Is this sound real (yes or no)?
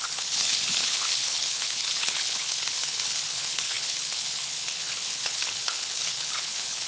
no